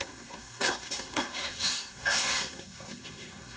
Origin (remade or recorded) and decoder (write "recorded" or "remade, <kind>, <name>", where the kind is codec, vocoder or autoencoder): remade, codec, SNAC